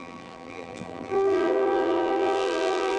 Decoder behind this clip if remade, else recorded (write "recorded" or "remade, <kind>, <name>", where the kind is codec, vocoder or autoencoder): remade, vocoder, BigVGAN v2